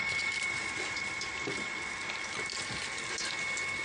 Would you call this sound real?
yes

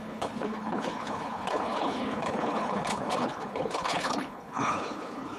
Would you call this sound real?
no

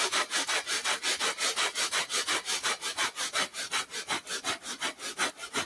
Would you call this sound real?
yes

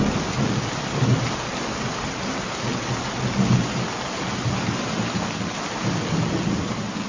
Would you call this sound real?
yes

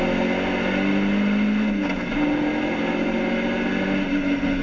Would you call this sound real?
yes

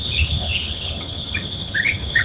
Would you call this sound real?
no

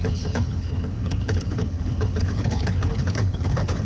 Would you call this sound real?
no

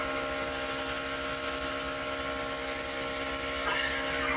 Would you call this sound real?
yes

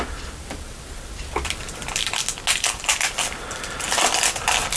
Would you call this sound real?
yes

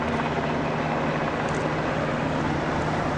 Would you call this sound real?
yes